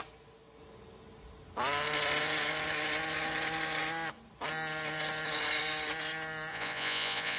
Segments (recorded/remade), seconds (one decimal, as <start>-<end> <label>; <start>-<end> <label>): 0.0-6.5 recorded; 6.5-7.4 remade